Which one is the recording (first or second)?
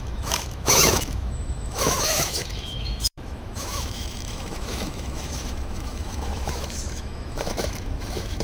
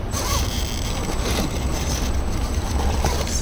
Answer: second